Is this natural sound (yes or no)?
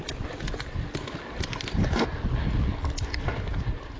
yes